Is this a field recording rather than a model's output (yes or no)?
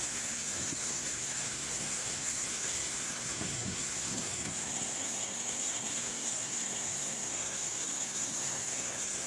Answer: no